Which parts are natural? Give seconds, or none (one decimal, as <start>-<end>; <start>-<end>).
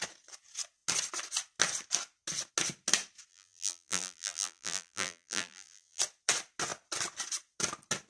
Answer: 0.0-3.3; 6.0-8.1